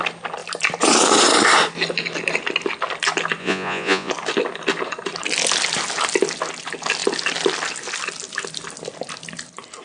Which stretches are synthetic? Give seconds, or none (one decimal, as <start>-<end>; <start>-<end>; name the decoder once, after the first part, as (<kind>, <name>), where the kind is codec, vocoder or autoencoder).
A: 3.4-4.1 (vocoder, Vocos)